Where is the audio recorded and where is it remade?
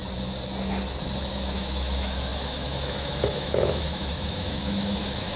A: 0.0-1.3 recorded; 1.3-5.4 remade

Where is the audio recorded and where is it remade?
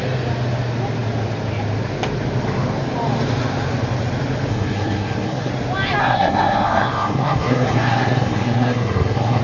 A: 0.0-4.5 recorded; 4.5-5.5 remade; 5.5-6.0 recorded; 6.0-9.4 remade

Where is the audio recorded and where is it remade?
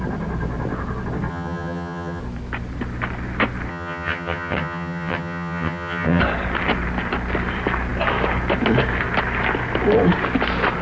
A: 0.0-1.3 recorded; 1.3-2.2 remade; 2.2-3.7 recorded; 3.7-6.2 remade; 6.2-10.8 recorded